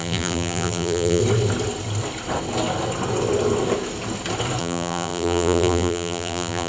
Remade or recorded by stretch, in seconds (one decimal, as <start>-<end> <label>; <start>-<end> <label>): 0.0-1.2 remade; 1.2-4.6 recorded; 4.6-6.7 remade